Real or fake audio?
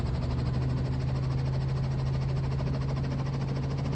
real